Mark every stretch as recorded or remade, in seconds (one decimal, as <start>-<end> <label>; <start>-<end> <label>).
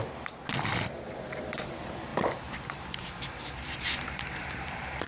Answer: 0.0-0.4 remade; 0.4-1.1 recorded; 1.1-5.1 remade